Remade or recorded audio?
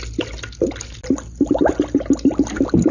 recorded